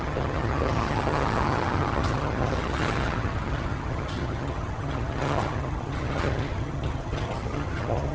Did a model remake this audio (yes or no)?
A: yes